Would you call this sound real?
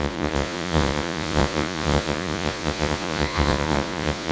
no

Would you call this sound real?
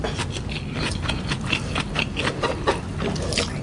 yes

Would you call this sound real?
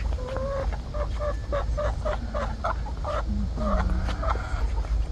yes